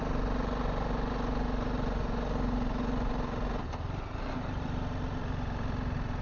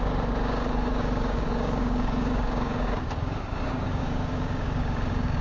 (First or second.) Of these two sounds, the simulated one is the second